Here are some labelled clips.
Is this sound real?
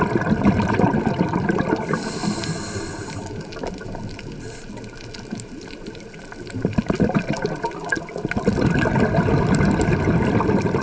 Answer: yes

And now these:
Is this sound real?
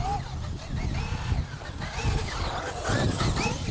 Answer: yes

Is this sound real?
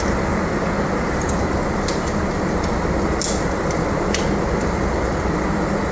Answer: yes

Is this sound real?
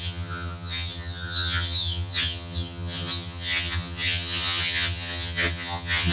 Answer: no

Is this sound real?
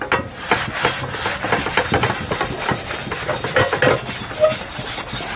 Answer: yes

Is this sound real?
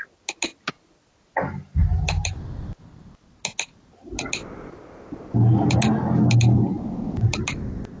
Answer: yes